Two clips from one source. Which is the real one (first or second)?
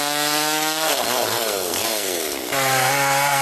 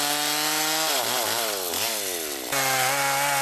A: second